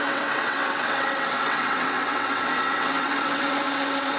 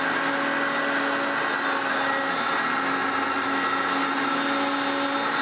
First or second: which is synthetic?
first